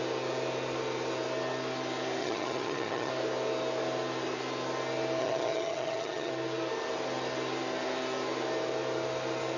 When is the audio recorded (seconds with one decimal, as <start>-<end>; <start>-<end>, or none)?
0.0-2.2; 3.1-5.2; 6.3-9.6